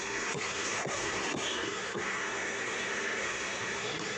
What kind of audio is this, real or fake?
fake